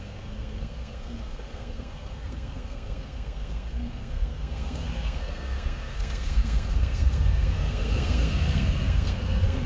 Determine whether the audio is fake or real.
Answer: fake